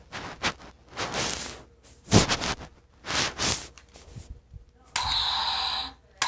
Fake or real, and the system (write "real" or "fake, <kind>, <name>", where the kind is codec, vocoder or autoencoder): real